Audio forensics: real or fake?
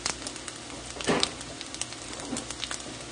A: real